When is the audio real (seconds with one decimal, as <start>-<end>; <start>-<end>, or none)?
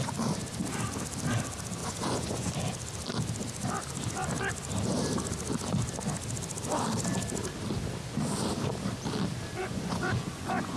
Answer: 0.0-1.8; 2.5-9.6